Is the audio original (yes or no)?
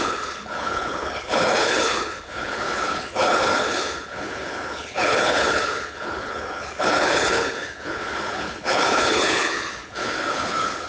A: no